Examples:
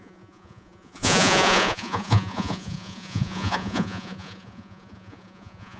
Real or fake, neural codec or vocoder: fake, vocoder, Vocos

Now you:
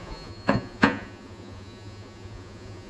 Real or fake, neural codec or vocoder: fake, vocoder, Vocos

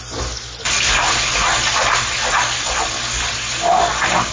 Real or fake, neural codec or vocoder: real